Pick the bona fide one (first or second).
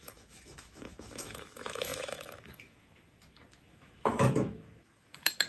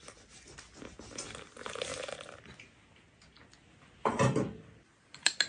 second